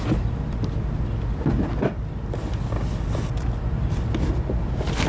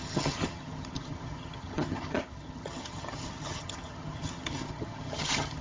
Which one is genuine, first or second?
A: first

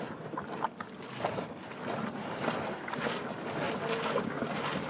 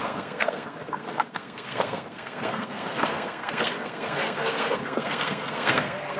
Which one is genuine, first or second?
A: first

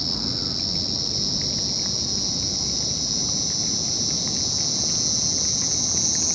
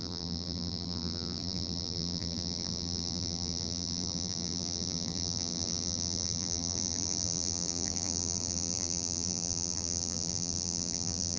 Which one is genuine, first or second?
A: first